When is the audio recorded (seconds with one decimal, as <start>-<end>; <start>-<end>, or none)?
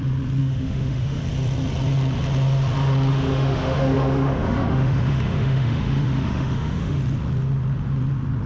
0.0-0.4; 1.2-3.1; 7.0-8.5